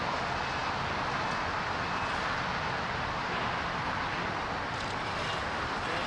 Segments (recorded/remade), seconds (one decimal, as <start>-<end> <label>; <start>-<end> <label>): 0.0-6.1 recorded